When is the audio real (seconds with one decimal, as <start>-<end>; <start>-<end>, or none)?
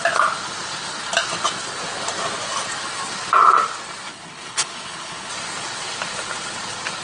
0.0-4.1; 5.3-7.0